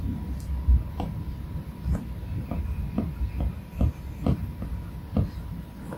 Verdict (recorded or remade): recorded